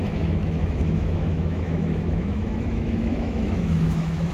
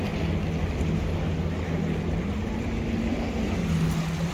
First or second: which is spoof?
first